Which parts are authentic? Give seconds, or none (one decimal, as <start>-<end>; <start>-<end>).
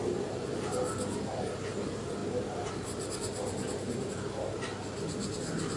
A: 0.0-5.8